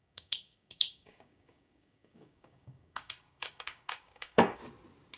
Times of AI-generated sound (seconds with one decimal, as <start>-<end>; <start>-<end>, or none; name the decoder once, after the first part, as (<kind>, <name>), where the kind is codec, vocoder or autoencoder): 0.0-4.6 (codec, DAC)